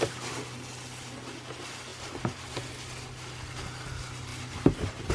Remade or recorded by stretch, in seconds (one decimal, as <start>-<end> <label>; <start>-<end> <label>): 0.0-5.1 recorded